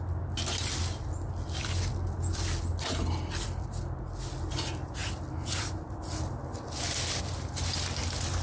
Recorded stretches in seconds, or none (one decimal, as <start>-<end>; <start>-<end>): 0.0-8.4